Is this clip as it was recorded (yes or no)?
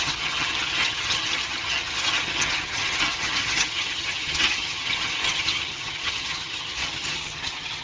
no